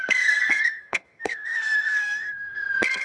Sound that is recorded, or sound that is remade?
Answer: remade